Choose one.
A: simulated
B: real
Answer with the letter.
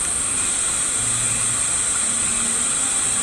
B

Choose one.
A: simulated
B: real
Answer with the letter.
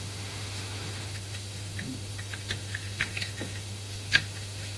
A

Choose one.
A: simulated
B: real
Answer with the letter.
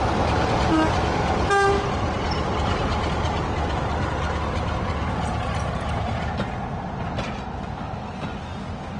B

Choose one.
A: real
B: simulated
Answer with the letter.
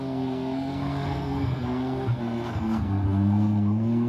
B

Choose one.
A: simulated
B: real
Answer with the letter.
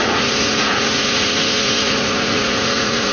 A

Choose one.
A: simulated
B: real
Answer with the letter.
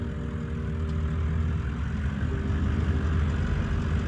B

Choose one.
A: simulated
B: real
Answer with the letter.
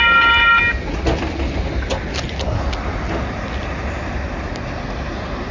B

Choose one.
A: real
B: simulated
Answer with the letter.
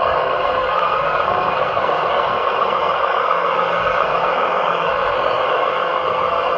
B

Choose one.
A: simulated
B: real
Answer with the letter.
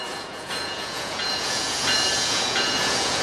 A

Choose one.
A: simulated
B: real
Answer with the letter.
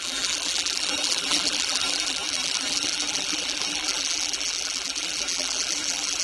A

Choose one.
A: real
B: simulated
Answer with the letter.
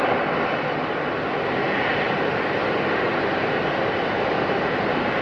A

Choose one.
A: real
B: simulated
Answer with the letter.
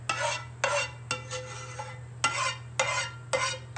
A